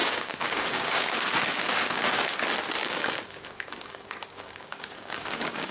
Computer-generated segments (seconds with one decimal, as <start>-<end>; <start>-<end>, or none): 0.0-2.2; 2.8-5.7